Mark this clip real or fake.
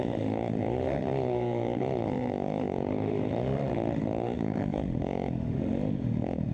fake